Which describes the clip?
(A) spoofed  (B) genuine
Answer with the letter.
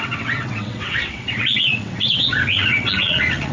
A